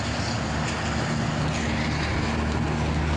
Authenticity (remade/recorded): recorded